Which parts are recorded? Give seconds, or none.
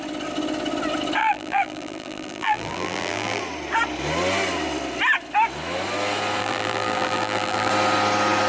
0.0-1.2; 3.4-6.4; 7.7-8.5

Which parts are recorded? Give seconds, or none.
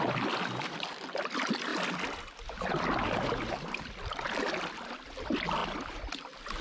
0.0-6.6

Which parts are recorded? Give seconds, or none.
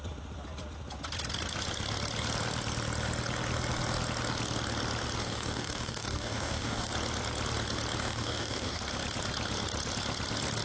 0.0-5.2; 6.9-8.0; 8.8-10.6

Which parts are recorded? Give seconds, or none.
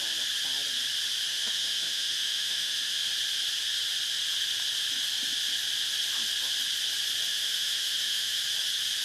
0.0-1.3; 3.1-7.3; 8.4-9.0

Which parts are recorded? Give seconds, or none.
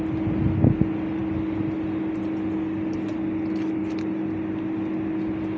0.0-5.6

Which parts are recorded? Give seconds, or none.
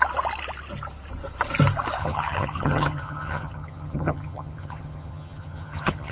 0.0-2.0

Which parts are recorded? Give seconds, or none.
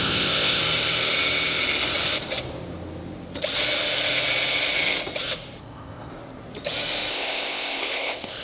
0.6-5.6; 6.1-7.1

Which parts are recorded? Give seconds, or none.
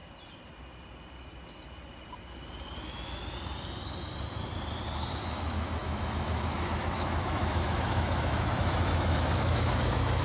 0.0-2.8; 3.2-5.2